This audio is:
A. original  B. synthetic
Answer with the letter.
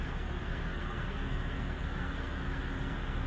B